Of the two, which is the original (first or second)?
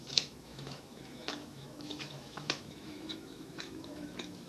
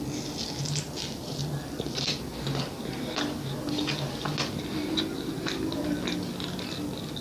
second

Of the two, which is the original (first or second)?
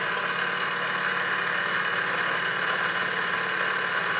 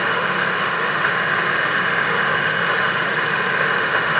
first